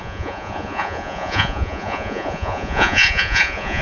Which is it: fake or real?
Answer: fake